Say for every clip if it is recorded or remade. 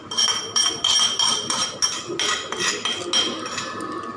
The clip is recorded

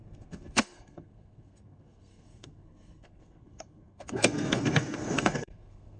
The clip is remade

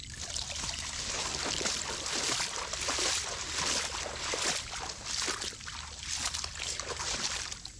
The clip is recorded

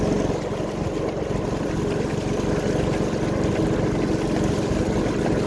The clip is recorded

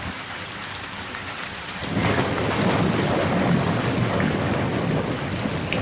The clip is recorded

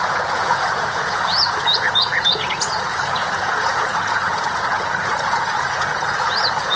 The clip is remade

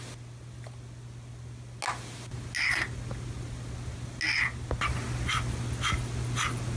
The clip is recorded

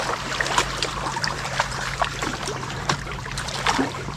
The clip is remade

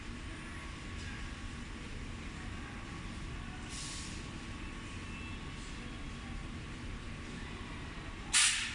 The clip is recorded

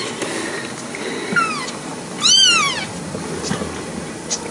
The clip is recorded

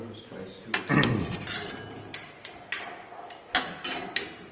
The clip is recorded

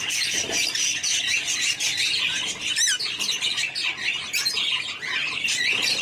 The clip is recorded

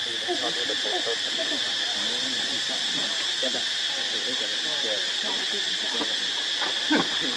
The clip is recorded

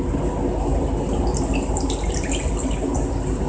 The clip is recorded